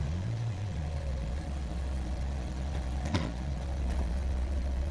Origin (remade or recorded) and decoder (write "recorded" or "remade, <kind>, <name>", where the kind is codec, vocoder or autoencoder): remade, vocoder, Vocos